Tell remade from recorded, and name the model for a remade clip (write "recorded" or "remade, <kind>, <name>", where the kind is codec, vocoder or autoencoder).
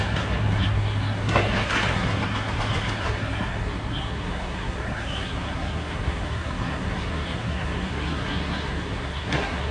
remade, codec, SNAC